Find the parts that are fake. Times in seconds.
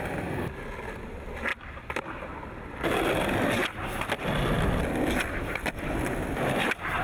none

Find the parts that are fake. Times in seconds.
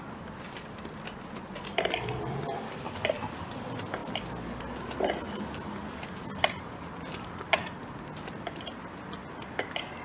none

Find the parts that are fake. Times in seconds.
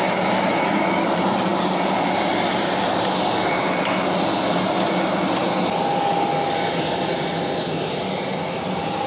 none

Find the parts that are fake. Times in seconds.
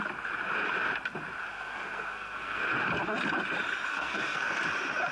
1.5-2.6 (codec, SNAC); 3.9-4.6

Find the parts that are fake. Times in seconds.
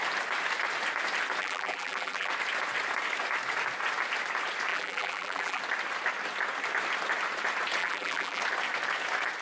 1.4-2.3 (vocoder, BigVGAN v2); 4.7-5.6; 7.8-8.4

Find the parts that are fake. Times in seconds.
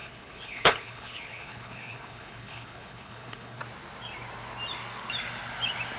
0.0-3.6 (codec, HILCodec)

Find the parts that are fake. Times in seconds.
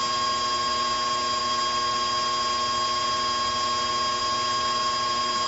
none